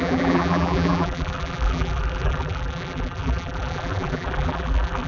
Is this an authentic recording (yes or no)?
no